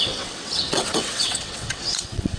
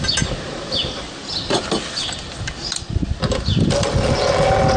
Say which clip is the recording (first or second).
second